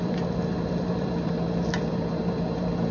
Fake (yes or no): yes